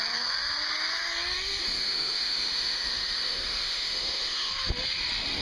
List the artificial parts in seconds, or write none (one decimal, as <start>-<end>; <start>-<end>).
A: 1.6-4.5